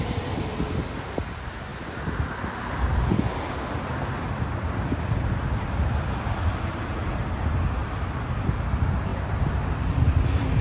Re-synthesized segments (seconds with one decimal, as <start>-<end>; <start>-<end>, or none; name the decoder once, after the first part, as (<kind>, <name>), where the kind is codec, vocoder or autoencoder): 7.8-8.5 (vocoder, BigVGAN v2); 9.1-10.6